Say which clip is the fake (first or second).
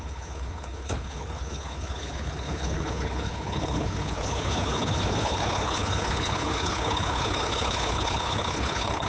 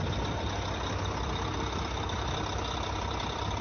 first